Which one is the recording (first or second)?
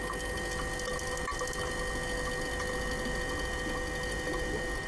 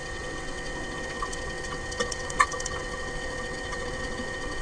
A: first